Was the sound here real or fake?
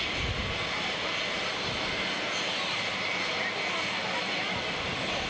real